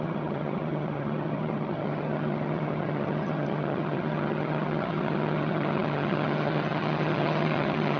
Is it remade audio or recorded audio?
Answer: remade